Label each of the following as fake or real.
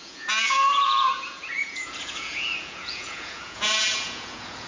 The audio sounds fake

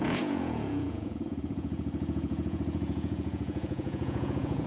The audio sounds fake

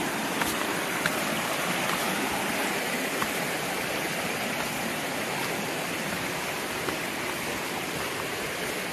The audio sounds real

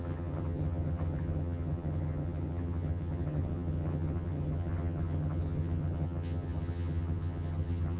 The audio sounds fake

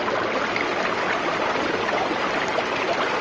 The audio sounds real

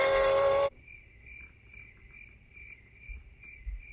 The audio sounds fake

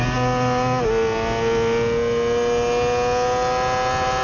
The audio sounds real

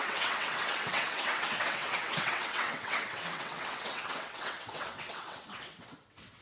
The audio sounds fake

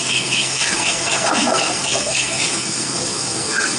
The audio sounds fake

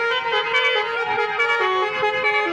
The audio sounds real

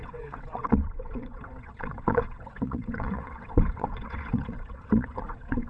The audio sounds fake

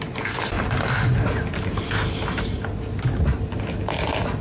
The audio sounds real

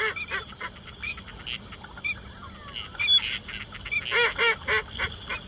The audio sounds real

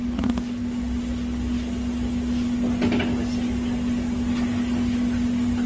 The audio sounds real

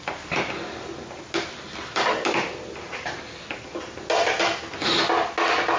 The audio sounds real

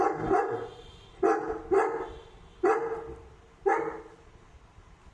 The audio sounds real